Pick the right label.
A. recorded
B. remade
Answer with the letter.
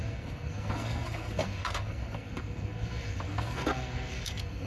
B